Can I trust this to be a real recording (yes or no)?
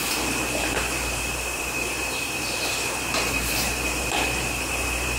no